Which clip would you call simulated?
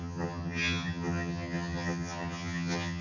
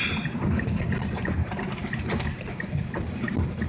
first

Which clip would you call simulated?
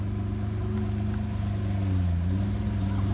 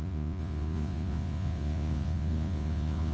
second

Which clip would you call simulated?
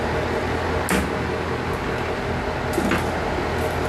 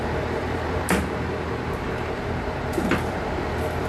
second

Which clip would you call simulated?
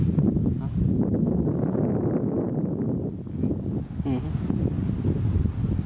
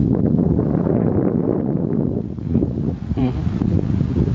second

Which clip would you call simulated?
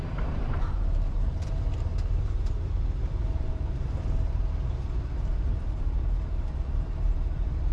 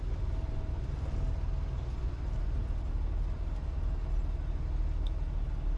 first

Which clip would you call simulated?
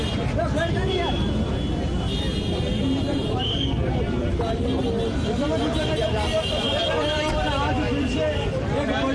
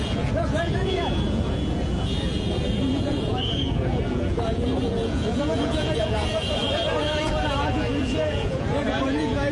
second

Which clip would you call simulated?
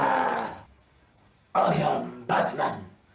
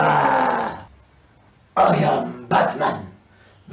first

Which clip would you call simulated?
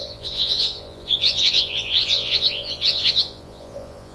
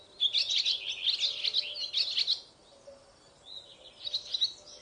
first